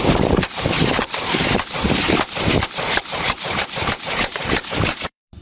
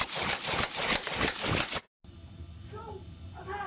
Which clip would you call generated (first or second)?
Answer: first